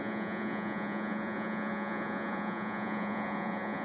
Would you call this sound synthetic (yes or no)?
yes